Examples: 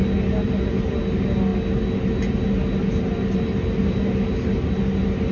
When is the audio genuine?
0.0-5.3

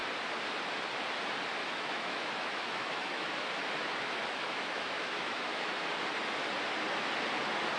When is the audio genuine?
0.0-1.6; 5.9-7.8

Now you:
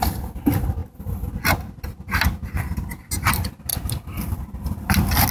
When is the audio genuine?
0.0-5.3